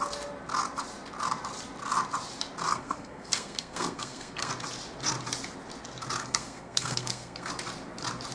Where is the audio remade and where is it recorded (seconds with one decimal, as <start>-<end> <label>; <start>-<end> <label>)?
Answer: 0.0-2.7 recorded; 2.7-4.5 remade; 4.5-6.2 recorded; 6.2-7.5 remade; 7.5-8.3 recorded